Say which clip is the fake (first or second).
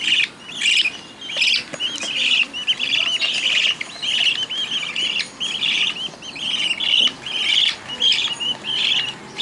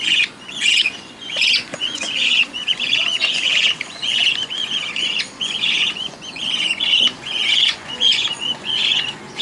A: second